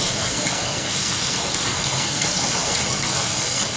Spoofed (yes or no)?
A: yes